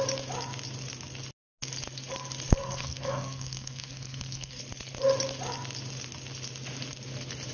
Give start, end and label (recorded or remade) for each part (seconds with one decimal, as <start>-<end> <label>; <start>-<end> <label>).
0.0-2.6 recorded; 2.6-4.6 remade; 4.6-7.5 recorded